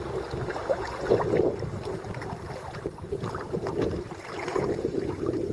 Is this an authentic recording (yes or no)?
yes